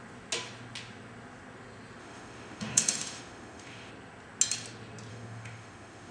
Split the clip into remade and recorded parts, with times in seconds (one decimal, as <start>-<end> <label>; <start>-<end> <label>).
0.0-2.0 recorded; 2.0-3.9 remade; 3.9-5.1 recorded; 5.1-6.1 remade